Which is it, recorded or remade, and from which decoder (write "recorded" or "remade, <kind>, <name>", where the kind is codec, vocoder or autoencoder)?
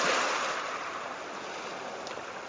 recorded